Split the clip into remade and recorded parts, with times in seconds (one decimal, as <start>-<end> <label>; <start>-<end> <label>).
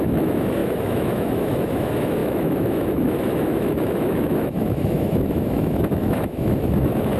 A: 0.0-7.2 remade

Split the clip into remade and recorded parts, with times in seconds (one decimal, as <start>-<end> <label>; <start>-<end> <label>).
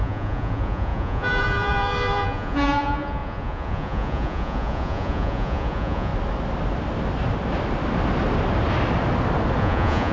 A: 0.0-6.1 remade; 6.1-9.6 recorded; 9.6-10.1 remade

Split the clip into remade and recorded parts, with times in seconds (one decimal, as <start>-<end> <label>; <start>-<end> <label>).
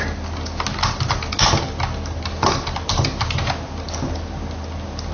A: 0.0-5.1 recorded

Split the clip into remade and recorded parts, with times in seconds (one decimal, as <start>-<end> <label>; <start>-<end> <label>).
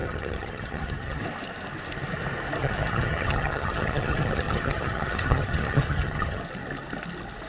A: 0.0-1.2 remade; 1.2-2.6 recorded; 2.6-6.4 remade; 6.4-7.5 recorded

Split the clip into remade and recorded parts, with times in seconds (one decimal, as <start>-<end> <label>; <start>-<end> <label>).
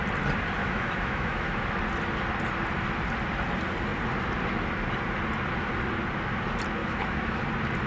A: 0.0-0.6 recorded; 0.6-1.8 remade; 1.8-6.8 recorded; 6.8-7.4 remade; 7.4-7.9 recorded